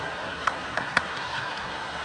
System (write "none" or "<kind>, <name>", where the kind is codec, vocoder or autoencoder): codec, SNAC